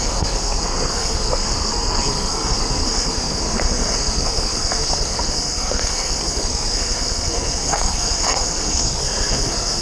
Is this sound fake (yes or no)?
yes